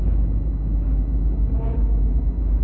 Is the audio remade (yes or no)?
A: no